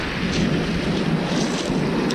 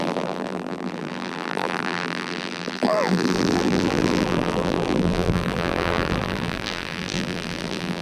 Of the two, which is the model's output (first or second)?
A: second